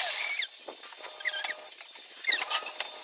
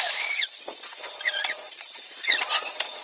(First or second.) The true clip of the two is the first